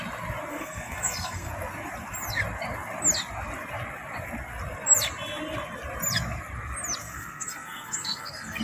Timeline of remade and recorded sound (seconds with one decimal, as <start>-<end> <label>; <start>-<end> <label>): 0.0-0.5 recorded; 0.5-1.5 remade; 1.5-7.0 recorded; 7.0-8.6 remade